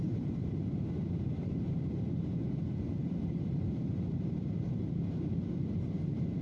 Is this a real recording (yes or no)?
no